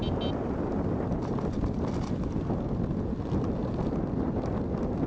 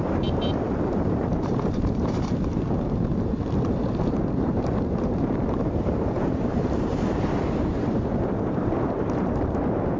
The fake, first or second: second